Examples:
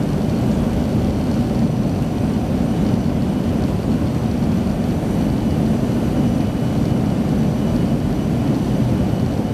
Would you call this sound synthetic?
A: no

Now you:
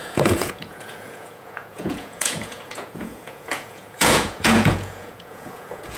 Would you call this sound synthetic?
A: yes